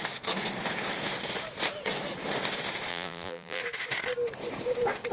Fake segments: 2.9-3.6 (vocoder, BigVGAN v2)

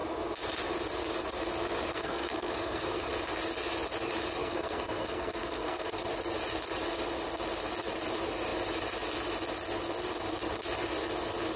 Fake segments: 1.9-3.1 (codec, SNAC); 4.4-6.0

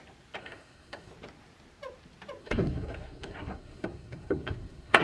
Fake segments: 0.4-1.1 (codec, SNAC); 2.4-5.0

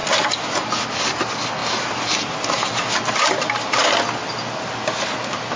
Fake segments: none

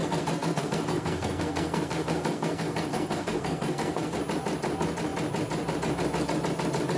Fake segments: 0.0-4.2 (codec, SNAC)

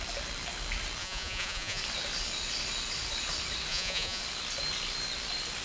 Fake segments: 1.0-1.8 (vocoder, Vocos); 3.7-4.2

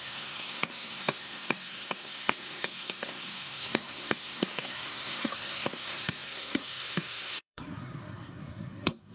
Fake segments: 0.0-9.1 (codec, SNAC)

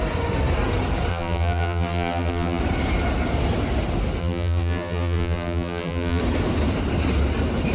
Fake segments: 1.1-2.6 (vocoder, BigVGAN v2); 4.2-6.2